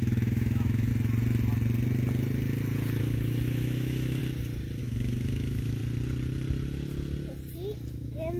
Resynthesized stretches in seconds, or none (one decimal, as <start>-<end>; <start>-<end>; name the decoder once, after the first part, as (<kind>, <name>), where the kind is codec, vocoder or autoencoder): 0.0-0.9 (autoencoder, DAC-VAE); 3.0-4.2; 4.8-5.8; 7.9-8.4